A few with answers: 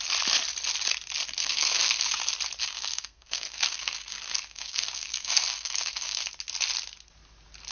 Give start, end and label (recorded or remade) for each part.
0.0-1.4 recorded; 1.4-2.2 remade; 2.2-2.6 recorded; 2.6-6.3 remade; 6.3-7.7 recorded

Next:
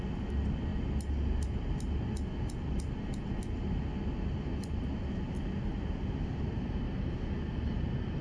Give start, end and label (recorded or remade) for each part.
0.0-8.2 recorded

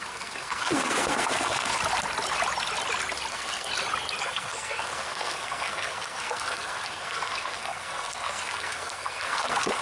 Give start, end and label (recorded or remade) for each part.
0.0-1.8 remade; 1.8-3.3 recorded; 3.3-3.7 remade; 3.7-4.2 recorded; 4.2-9.8 remade

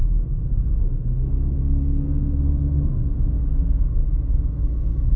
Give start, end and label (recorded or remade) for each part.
0.0-5.2 remade

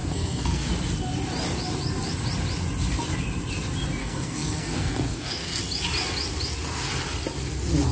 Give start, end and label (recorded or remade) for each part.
0.0-0.7 remade; 0.7-4.0 recorded; 4.0-5.6 remade; 5.6-7.9 recorded

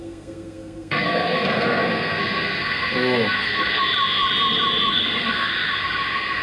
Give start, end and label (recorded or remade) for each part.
0.0-3.8 remade; 3.8-4.9 recorded; 4.9-5.5 remade; 5.5-6.4 recorded

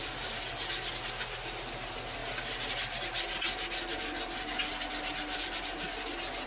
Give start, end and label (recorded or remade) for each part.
0.0-6.5 recorded

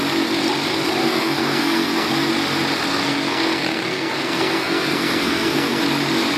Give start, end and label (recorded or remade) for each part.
0.0-1.0 recorded; 1.0-2.1 remade; 2.1-2.9 recorded; 2.9-5.8 remade; 5.8-6.4 recorded